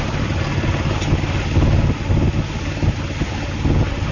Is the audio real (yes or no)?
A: yes